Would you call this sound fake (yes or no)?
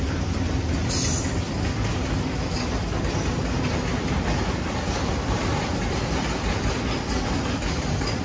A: no